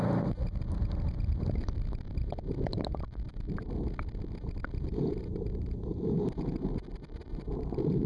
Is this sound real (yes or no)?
yes